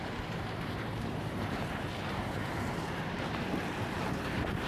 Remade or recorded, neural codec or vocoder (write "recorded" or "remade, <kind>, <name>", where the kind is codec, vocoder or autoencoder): remade, vocoder, BigVGAN v2